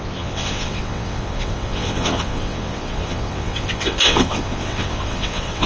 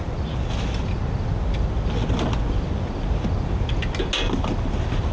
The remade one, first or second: first